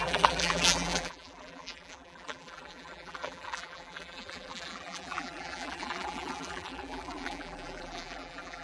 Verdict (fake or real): fake